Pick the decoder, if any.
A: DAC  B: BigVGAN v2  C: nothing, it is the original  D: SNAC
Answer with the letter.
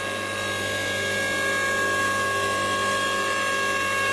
C